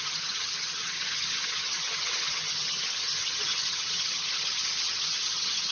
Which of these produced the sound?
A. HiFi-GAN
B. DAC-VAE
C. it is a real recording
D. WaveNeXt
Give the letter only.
A